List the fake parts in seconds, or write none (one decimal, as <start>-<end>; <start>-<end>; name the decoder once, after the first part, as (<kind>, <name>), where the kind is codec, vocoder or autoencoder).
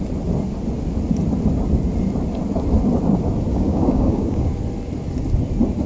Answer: 3.5-4.6 (codec, DAC)